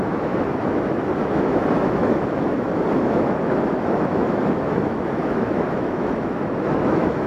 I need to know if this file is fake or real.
fake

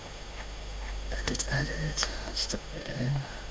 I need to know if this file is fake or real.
fake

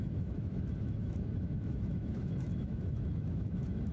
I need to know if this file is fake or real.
fake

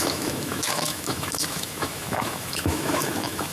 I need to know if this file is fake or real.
fake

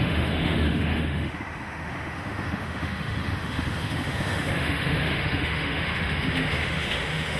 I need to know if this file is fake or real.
fake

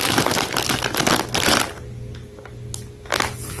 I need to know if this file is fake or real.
real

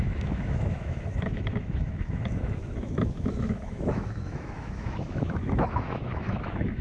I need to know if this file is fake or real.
fake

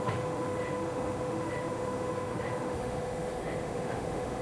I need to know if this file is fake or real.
fake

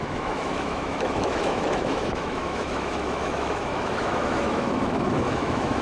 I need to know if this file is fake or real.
fake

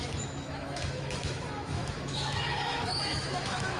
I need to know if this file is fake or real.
fake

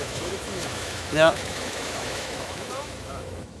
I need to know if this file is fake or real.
fake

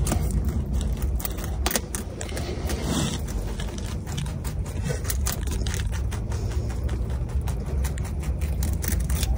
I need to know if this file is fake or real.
real